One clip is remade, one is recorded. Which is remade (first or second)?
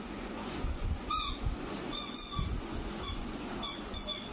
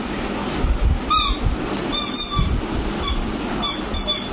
first